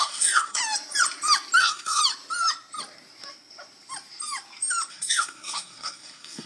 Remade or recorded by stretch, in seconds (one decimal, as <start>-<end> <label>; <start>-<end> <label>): 0.0-0.6 remade; 0.6-1.6 recorded; 1.6-2.0 remade; 2.0-4.9 recorded; 4.9-6.5 remade